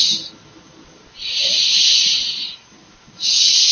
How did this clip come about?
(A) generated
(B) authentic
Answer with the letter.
B